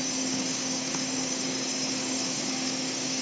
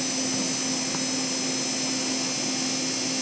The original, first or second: second